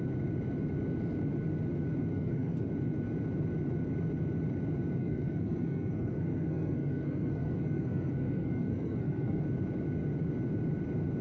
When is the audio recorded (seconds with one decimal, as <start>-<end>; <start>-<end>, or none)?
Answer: 0.0-2.1; 2.7-5.0; 9.4-11.2